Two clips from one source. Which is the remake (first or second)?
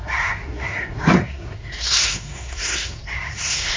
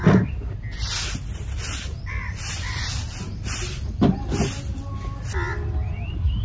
first